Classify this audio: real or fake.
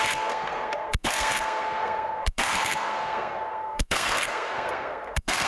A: fake